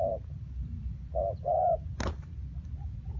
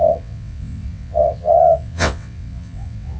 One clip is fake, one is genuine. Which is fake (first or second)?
second